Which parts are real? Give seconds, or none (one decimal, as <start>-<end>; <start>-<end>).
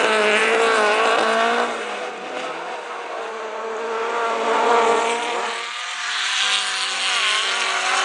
0.0-8.0